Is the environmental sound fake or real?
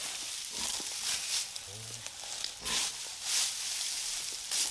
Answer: real